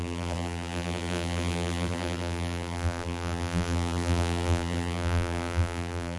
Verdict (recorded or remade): remade